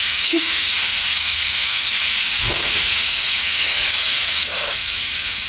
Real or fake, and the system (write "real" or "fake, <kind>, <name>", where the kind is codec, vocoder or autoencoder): fake, codec, SNAC